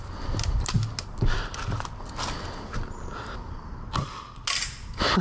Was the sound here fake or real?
real